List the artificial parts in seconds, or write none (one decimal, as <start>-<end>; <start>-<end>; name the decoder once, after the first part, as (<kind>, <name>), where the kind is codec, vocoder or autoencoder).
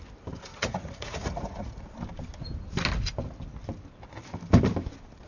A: 0.5-1.8 (vocoder, Vocos)